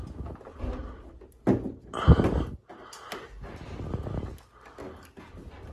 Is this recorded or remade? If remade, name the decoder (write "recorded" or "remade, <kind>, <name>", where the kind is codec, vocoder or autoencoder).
recorded